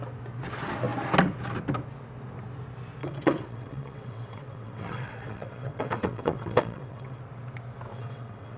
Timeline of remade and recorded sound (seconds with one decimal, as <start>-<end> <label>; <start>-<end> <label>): 0.0-3.0 recorded; 3.0-7.2 remade; 7.2-7.9 recorded; 7.9-8.6 remade